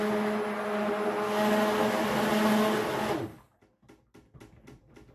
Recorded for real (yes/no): yes